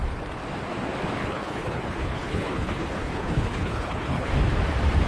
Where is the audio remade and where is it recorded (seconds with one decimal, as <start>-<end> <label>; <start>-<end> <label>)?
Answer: 0.0-1.2 recorded; 1.2-4.3 remade; 4.3-5.1 recorded